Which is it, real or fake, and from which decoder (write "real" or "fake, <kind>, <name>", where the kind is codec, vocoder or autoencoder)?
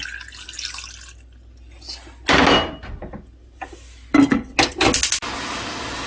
real